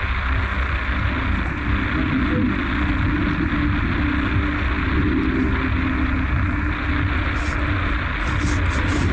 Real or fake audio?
real